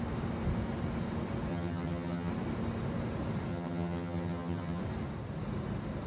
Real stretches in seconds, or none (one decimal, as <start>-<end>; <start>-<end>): 0.0-1.5; 2.3-3.5; 4.8-6.1